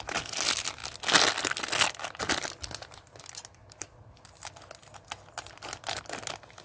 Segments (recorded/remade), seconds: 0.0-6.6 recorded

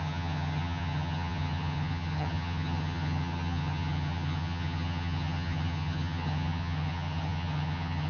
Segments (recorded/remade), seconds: 0.0-8.1 remade

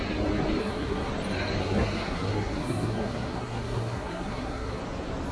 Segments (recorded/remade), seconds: 0.0-0.6 recorded; 0.6-1.1 remade; 1.1-1.6 recorded; 1.6-4.8 remade; 4.8-5.3 recorded

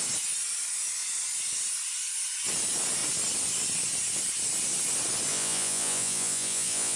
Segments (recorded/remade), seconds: 0.0-5.3 recorded; 5.3-7.0 remade

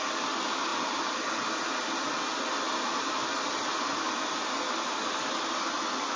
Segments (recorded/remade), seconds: 0.0-0.7 recorded; 0.7-1.2 remade; 1.2-6.2 recorded

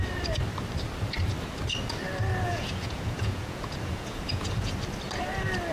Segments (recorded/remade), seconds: 0.0-2.3 recorded; 2.3-4.7 remade; 4.7-5.7 recorded

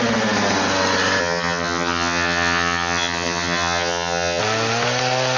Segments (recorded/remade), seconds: 0.0-1.2 recorded; 1.2-4.4 remade; 4.4-5.4 recorded